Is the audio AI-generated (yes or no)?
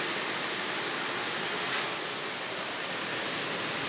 no